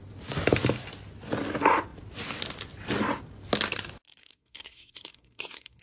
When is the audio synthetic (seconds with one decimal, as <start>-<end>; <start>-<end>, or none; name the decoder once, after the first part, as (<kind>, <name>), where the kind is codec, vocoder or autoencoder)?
4.2-5.8 (codec, SNAC)

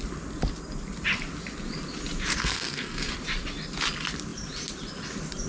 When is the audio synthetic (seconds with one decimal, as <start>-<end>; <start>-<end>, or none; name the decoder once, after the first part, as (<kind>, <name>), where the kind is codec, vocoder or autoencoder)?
2.4-3.1 (codec, SNAC)

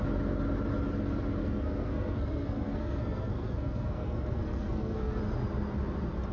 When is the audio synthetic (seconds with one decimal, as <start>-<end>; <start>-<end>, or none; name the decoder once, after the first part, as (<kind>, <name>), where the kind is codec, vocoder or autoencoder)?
1.4-5.2 (codec, SNAC)